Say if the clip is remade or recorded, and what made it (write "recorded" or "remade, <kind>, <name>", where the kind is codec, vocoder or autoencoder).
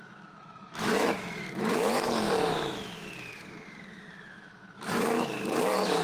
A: remade, autoencoder, DAC-VAE